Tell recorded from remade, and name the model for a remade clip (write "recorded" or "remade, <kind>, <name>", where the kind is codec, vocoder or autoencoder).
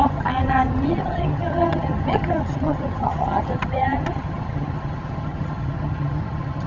remade, vocoder, HiFi-GAN